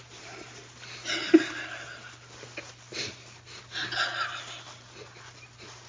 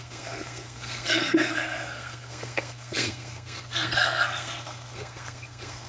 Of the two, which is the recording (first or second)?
first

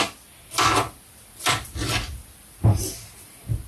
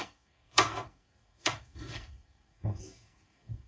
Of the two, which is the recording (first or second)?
first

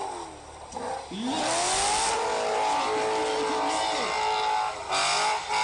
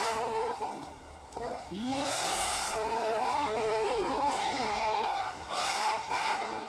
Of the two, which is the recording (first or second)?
first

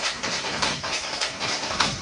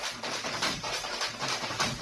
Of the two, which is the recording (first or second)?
second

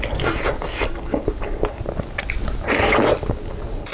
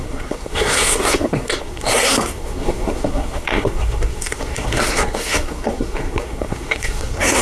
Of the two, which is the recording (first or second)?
first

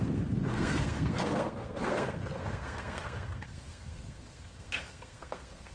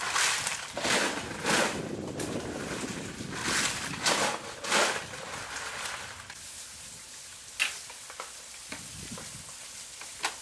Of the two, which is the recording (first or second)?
second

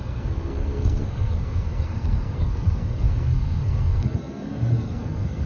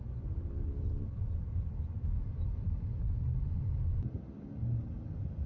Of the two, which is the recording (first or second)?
second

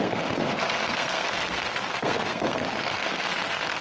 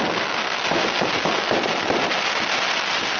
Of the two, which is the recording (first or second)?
second